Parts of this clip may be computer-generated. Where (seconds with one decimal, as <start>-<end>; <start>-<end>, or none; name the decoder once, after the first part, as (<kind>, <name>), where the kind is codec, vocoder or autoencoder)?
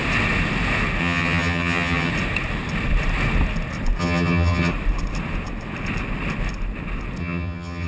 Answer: 1.0-2.1 (vocoder, HiFi-GAN); 4.0-4.7; 7.2-7.9